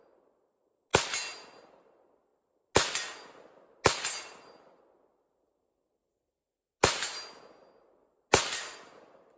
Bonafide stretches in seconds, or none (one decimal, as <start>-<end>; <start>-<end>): 0.0-9.4